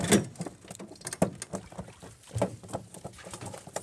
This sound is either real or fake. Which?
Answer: real